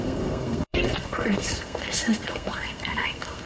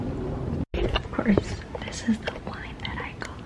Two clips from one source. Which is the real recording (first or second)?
second